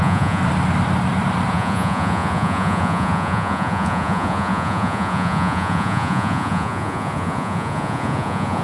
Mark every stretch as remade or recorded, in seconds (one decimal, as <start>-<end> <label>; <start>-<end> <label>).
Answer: 0.0-0.4 remade; 0.4-1.5 recorded; 1.5-8.6 remade